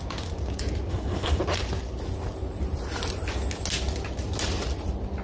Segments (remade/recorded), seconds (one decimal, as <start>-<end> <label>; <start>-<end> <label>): 0.0-0.9 recorded; 0.9-1.4 remade; 1.4-5.2 recorded